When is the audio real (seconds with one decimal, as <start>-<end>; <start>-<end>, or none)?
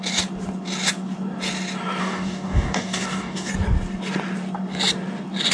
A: 0.0-2.0; 3.5-5.5